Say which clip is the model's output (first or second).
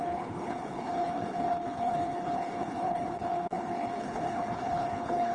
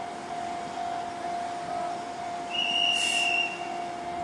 first